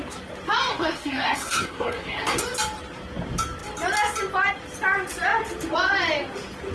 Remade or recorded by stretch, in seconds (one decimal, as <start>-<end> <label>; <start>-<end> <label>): 0.0-0.7 recorded; 0.7-2.4 remade; 2.4-6.7 recorded